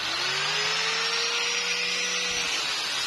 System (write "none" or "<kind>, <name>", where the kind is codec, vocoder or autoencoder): none